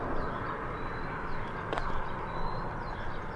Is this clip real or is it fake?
real